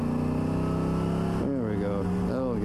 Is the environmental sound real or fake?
real